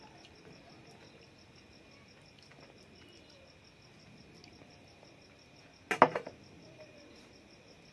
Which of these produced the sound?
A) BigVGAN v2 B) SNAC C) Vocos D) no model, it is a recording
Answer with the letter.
D